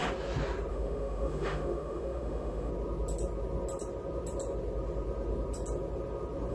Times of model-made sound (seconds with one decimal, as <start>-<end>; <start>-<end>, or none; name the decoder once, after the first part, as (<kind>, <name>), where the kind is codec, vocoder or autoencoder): 0.7-2.7 (autoencoder, DAC-VAE)